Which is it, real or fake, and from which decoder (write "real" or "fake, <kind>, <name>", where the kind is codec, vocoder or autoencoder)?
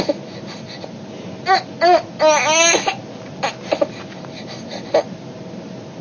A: real